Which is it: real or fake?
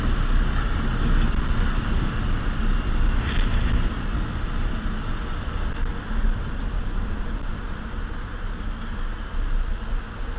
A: real